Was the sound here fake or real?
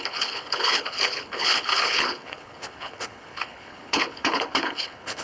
fake